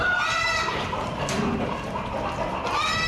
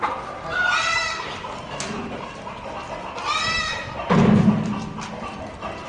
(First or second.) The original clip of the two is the second